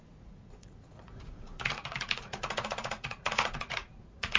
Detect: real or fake fake